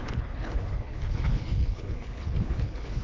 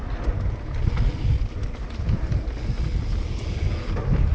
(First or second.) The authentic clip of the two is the second